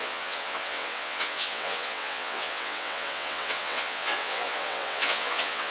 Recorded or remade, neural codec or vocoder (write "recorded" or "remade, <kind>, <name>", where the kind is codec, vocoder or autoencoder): remade, vocoder, WaveNeXt